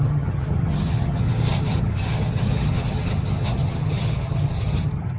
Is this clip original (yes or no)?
no